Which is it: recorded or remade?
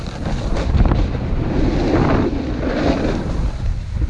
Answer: recorded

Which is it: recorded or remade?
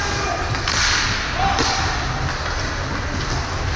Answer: recorded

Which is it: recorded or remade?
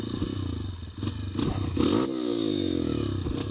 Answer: recorded